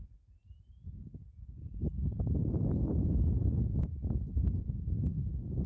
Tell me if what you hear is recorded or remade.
recorded